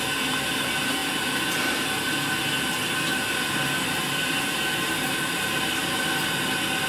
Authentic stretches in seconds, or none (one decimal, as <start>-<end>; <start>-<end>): 0.0-6.9

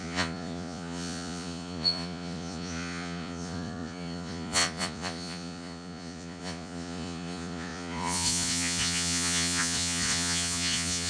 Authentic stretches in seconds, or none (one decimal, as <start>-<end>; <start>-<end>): none